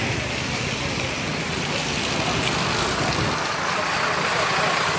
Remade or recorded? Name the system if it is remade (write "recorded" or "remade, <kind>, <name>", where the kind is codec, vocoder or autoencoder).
recorded